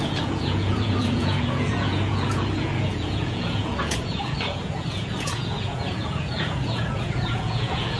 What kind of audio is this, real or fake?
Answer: fake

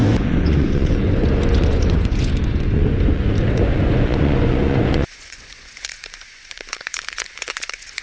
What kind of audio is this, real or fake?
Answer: fake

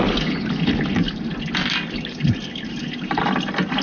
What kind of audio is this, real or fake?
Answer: real